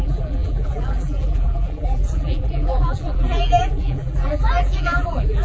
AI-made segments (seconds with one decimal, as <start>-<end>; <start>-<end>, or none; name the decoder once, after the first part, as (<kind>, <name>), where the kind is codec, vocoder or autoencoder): 0.0-5.4 (vocoder, BigVGAN v2)